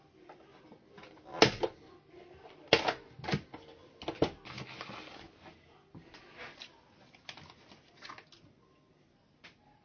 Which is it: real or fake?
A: real